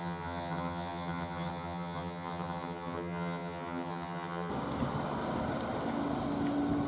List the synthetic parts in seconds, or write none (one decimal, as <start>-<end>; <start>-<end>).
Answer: 0.0-4.5